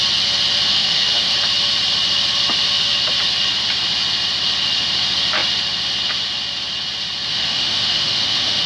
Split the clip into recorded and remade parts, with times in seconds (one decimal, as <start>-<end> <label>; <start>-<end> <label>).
0.0-0.7 recorded; 0.7-1.3 remade; 1.3-7.3 recorded; 7.3-8.7 remade